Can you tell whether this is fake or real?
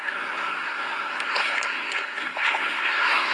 fake